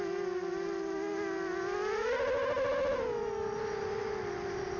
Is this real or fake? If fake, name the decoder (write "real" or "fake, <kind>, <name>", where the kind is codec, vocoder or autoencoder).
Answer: real